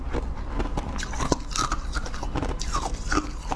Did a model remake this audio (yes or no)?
no